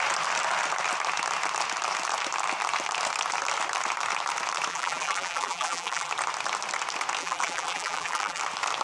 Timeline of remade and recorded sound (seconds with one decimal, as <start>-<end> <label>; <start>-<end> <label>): 0.0-4.7 recorded; 4.7-6.1 remade; 6.1-7.2 recorded; 7.2-8.4 remade; 8.4-8.8 recorded